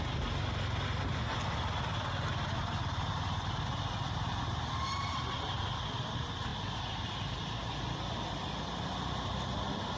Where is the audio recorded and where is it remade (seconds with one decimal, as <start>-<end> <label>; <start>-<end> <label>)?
0.0-10.0 recorded